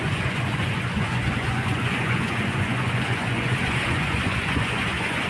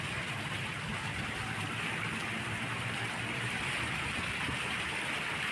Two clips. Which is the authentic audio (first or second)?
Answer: second